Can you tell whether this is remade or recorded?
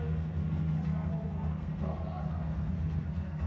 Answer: remade